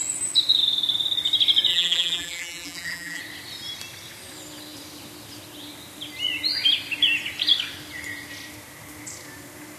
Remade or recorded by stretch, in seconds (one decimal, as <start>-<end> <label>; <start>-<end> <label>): 0.0-1.7 recorded; 1.7-3.2 remade; 3.2-9.8 recorded

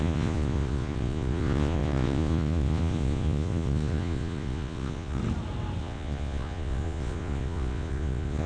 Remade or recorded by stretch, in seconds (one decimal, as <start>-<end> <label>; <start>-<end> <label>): 0.0-5.2 remade; 5.2-5.8 recorded; 5.8-8.5 remade

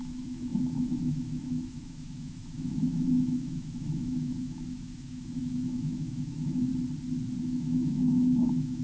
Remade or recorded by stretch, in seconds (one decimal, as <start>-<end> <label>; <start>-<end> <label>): 0.0-6.7 remade; 6.7-7.4 recorded; 7.4-8.8 remade

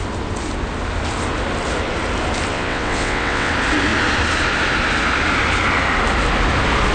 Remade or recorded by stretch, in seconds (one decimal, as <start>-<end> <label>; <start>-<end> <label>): 0.0-2.5 recorded; 2.5-3.5 remade; 3.5-6.9 recorded

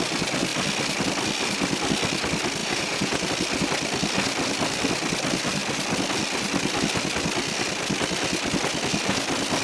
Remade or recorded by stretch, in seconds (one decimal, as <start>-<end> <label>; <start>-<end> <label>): 0.0-2.6 recorded; 2.6-3.3 remade; 3.3-9.6 recorded

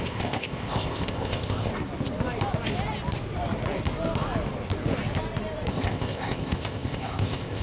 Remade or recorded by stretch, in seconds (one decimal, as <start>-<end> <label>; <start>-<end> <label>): 0.0-1.7 remade; 1.7-5.7 recorded; 5.7-7.6 remade